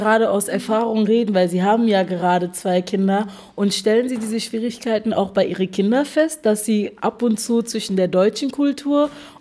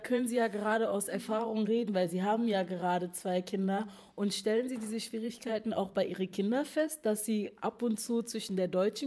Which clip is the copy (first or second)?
second